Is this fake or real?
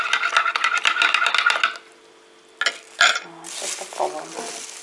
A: real